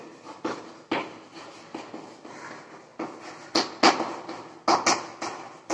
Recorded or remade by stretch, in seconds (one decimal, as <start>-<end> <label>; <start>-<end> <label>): 0.0-5.7 recorded